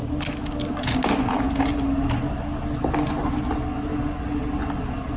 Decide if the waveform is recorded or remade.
recorded